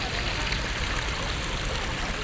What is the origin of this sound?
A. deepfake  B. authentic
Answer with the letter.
B